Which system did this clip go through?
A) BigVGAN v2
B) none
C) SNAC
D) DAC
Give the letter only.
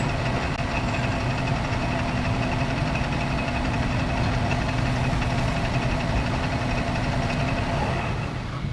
B